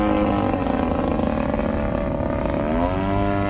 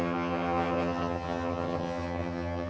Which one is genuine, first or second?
first